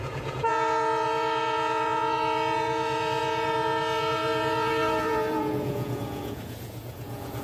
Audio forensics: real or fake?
fake